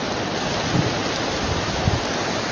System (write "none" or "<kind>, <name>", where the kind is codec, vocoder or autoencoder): none